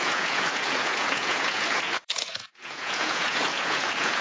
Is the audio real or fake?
fake